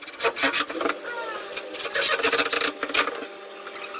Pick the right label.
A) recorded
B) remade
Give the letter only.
A